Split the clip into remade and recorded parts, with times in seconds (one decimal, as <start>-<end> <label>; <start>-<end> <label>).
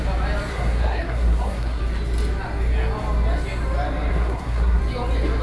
0.0-0.5 recorded; 0.5-1.8 remade; 1.8-4.1 recorded; 4.1-4.8 remade; 4.8-5.4 recorded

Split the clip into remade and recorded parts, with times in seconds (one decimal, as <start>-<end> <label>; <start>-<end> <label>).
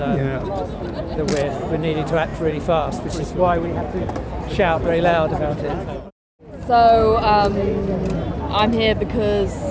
0.0-9.7 recorded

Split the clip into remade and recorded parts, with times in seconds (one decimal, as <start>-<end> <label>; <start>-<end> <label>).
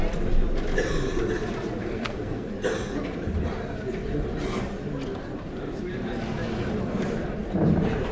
0.0-1.8 recorded; 1.8-2.5 remade; 2.5-8.1 recorded